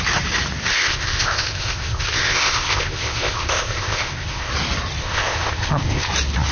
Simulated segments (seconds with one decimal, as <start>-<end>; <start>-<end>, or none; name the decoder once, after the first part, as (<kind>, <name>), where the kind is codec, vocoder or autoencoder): 0.7-4.5 (codec, ZipCodec); 5.0-6.1